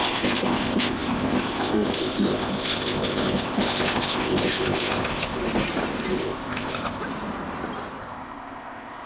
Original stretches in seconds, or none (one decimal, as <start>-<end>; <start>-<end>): 5.4-6.2; 7.0-8.0